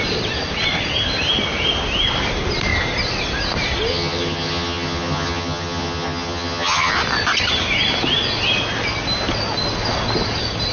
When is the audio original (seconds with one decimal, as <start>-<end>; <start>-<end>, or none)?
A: 0.0-3.9; 6.9-10.7

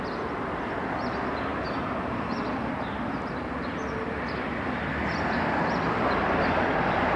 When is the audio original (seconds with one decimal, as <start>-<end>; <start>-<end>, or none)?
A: 0.0-7.2

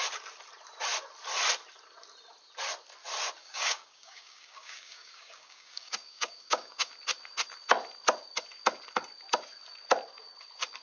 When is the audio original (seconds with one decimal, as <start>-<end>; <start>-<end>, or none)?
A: 0.0-3.4; 6.9-10.8